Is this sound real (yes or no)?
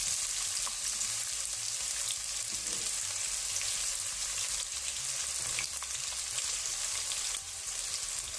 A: yes